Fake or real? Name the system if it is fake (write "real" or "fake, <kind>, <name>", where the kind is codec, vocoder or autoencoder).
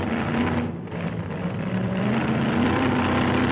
fake, vocoder, BigVGAN v2